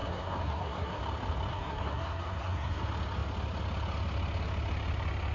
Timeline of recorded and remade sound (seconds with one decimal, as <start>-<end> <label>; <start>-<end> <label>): 0.0-1.0 remade; 1.0-1.5 recorded; 1.5-2.8 remade; 2.8-5.3 recorded